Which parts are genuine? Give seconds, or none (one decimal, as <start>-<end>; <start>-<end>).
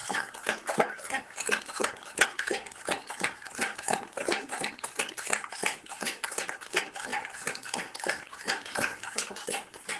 none